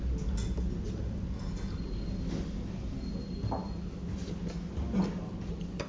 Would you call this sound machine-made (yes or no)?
no